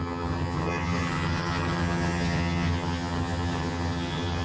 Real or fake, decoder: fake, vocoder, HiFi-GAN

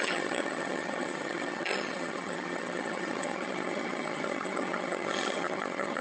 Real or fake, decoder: fake, vocoder, HiFi-GAN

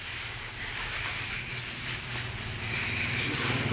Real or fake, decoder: fake, vocoder, BigVGAN v2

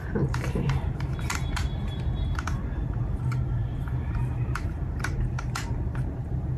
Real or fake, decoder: fake, vocoder, BigVGAN v2